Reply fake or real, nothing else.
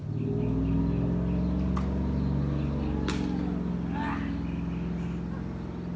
real